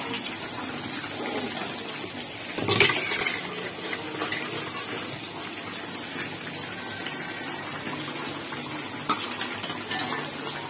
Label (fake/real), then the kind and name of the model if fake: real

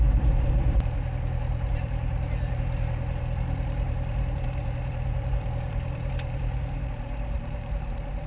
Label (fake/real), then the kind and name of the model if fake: fake, vocoder, BigVGAN v2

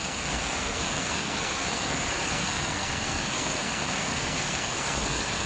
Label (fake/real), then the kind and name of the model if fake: fake, codec, SNAC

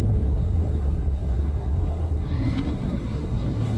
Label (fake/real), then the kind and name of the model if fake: fake, codec, SNAC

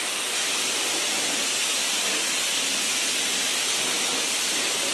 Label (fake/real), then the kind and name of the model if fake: real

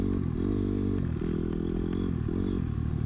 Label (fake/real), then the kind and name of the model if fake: real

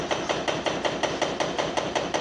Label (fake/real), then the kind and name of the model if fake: real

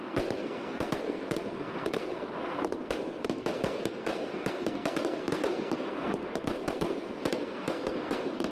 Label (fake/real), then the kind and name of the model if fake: fake, codec, SNAC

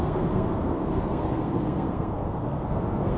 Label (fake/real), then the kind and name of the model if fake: fake, codec, SNAC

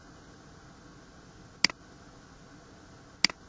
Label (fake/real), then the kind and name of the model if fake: real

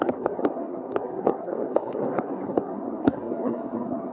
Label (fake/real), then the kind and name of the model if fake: fake, codec, SNAC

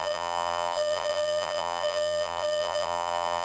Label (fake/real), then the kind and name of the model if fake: fake, vocoder, BigVGAN v2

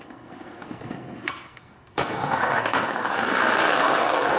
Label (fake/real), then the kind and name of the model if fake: fake, codec, SNAC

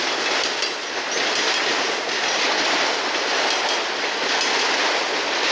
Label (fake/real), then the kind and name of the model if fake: real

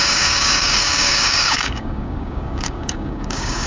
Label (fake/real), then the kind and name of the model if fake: fake, codec, DAC